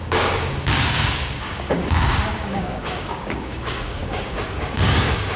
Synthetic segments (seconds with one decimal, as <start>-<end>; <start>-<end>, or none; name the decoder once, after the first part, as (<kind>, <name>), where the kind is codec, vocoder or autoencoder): 0.0-5.4 (codec, DAC)